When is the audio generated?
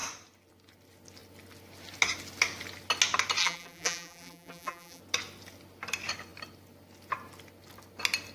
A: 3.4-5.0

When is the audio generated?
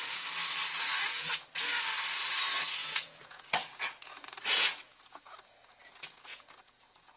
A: 2.8-7.2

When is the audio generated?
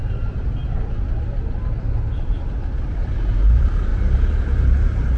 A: none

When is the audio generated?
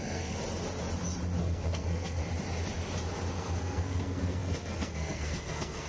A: 0.0-0.4; 1.4-2.2; 3.3-5.9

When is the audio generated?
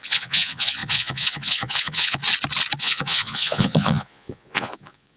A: 0.0-2.2; 2.8-5.2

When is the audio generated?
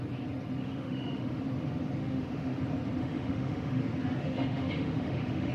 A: 0.6-1.4; 2.0-2.6; 3.0-3.8; 4.2-5.5